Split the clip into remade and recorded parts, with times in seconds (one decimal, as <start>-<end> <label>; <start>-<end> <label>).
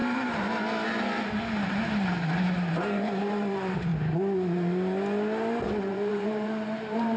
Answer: 0.0-3.9 remade; 3.9-5.9 recorded; 5.9-7.2 remade